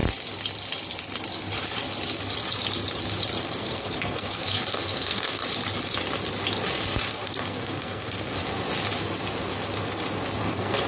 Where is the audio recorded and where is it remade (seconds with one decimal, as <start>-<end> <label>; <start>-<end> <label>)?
0.0-3.4 recorded; 3.4-5.4 remade; 5.4-7.1 recorded; 7.1-8.4 remade; 8.4-10.4 recorded; 10.4-10.9 remade